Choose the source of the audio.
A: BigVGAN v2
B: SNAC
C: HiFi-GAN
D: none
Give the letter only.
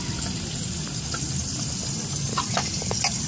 D